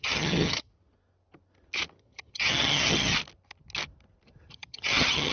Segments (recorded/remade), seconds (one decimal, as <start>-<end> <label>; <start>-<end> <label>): 0.0-0.7 remade; 0.7-2.0 recorded; 2.0-3.2 remade; 3.2-4.5 recorded; 4.5-5.3 remade